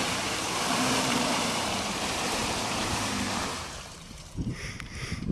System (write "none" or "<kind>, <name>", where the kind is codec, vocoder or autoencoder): vocoder, BigVGAN v2